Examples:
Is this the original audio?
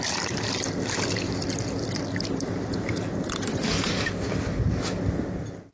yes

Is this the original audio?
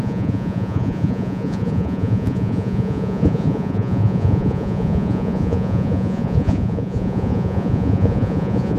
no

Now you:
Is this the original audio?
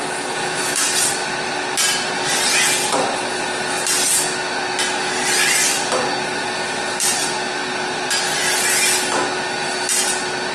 yes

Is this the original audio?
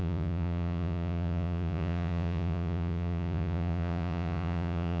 no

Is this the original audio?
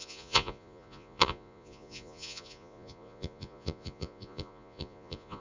no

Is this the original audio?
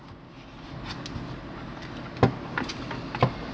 yes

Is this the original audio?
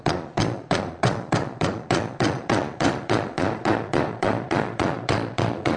no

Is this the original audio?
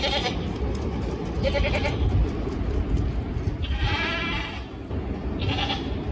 yes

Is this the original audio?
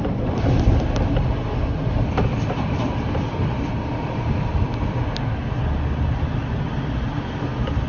yes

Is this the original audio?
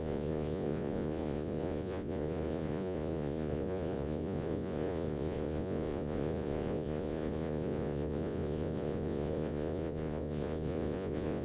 no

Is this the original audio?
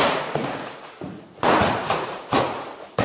no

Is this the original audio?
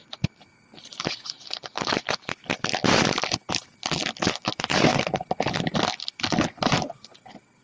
yes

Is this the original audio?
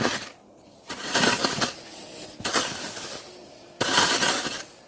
yes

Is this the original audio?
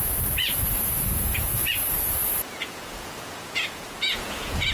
no